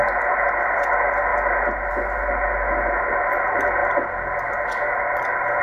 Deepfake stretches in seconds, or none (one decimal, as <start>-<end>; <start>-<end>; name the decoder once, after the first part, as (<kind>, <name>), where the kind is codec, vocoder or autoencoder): none